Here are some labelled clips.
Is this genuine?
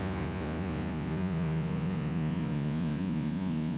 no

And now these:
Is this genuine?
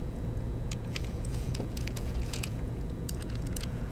no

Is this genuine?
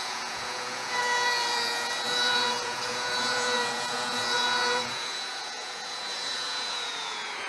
no